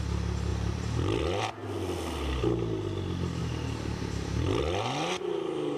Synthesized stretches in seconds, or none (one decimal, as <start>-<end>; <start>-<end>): 0.5-1.2; 3.4-4.6